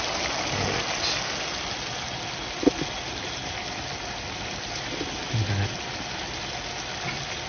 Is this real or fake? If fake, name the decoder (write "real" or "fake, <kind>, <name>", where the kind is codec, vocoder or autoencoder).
real